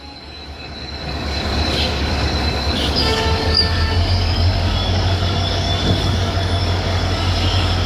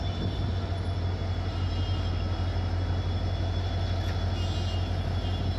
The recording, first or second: second